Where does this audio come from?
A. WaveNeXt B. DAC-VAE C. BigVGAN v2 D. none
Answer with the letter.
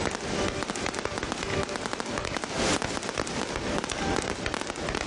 D